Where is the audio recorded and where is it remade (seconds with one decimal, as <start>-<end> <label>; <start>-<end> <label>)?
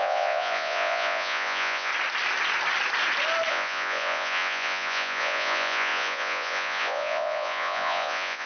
0.0-1.9 remade; 1.9-3.5 recorded; 3.5-8.5 remade